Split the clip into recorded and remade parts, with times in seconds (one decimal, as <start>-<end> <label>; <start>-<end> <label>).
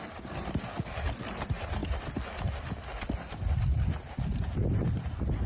0.0-5.5 recorded